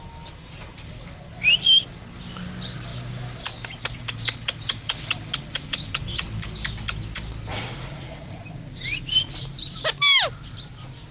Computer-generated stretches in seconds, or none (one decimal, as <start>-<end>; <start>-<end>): 7.5-8.4